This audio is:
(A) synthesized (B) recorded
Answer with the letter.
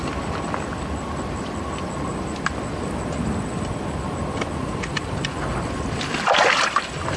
B